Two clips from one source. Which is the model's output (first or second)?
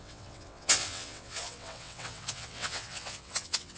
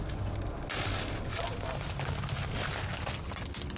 first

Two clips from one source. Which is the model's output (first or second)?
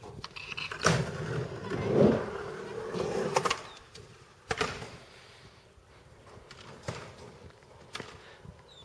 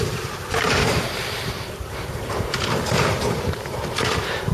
second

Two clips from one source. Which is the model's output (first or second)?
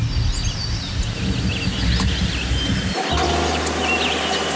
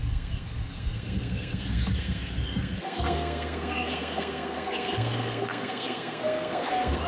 second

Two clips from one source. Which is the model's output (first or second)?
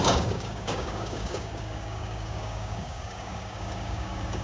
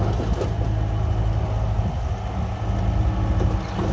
first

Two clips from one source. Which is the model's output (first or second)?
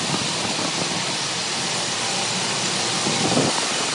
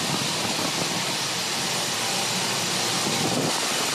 first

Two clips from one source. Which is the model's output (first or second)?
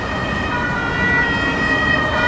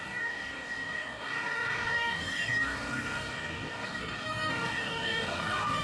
second